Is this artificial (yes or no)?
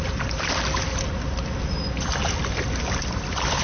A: no